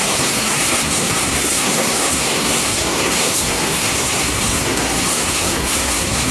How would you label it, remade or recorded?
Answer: remade